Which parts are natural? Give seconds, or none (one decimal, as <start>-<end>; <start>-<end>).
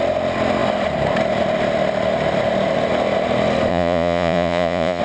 0.0-3.7